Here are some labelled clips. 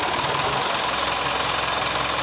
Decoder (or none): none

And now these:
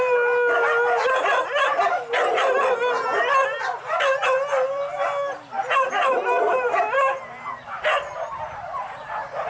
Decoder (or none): none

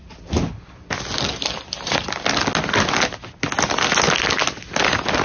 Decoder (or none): none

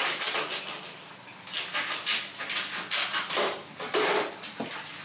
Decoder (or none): none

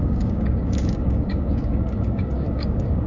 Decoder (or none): codec, DAC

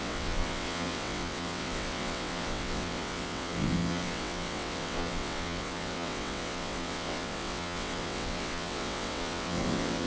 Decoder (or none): vocoder, WaveNeXt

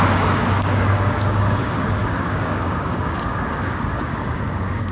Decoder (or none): codec, DAC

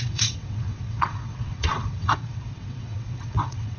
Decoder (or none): vocoder, WaveNeXt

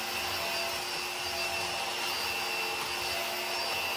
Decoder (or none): none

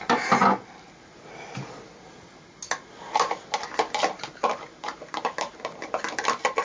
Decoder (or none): none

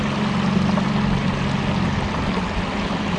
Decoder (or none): none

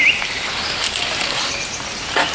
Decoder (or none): vocoder, BigVGAN v2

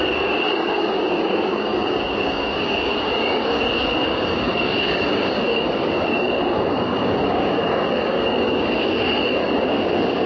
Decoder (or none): codec, DAC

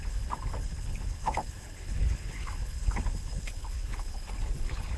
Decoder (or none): codec, HILCodec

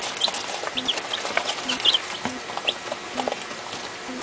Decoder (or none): none